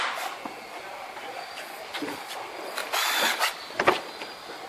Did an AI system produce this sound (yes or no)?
no